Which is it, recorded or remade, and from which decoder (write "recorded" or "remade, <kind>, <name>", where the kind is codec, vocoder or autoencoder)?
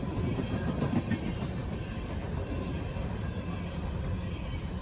recorded